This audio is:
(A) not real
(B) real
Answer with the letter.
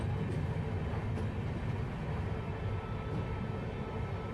B